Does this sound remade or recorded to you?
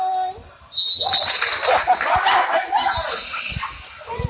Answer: recorded